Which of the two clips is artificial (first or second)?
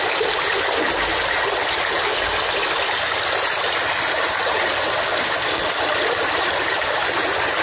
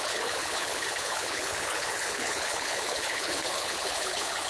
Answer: second